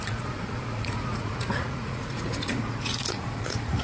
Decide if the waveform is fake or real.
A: fake